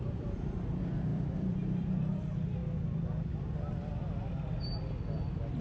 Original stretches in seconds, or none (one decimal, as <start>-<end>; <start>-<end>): 0.0-1.1; 2.1-5.6